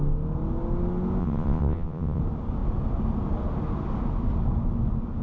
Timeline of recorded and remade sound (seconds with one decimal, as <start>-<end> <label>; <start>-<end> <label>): 0.0-1.2 recorded; 1.2-2.2 remade; 2.2-5.2 recorded

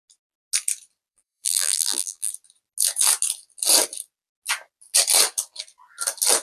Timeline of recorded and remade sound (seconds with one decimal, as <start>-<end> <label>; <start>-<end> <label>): 0.0-1.1 recorded; 1.1-2.3 remade; 2.3-6.4 recorded

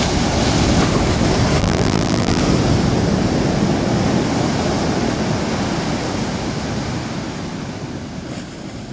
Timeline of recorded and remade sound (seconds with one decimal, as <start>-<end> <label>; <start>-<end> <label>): 0.0-1.6 recorded; 1.6-2.4 remade; 2.4-8.9 recorded

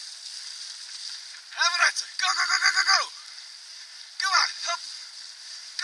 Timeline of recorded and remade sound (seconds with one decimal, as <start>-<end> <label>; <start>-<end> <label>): 0.0-5.8 recorded

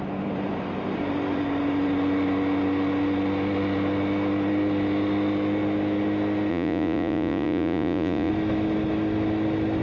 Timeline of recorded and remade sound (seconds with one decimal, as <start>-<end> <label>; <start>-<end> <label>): 0.0-6.5 recorded; 6.5-8.3 remade; 8.3-9.8 recorded

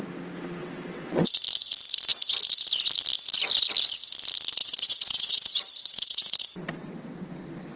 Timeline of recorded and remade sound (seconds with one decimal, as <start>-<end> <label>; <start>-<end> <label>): 0.0-0.6 recorded; 0.6-1.3 remade; 1.3-4.6 recorded; 4.6-7.3 remade; 7.3-7.8 recorded